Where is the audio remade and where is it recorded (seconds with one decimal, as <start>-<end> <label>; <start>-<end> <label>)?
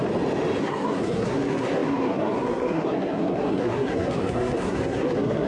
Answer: 0.0-0.6 recorded; 0.6-5.5 remade